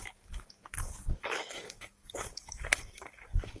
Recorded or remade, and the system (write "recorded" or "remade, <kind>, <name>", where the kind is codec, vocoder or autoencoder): remade, codec, DAC